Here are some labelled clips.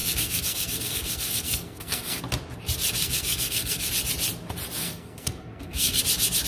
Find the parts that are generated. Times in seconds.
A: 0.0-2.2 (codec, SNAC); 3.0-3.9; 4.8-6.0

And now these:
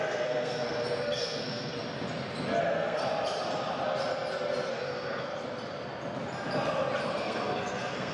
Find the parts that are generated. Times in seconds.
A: 0.0-1.7 (codec, SNAC); 2.6-3.0; 4.7-5.3; 7.1-8.1